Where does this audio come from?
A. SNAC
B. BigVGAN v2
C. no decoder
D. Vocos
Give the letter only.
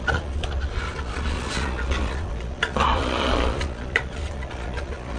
D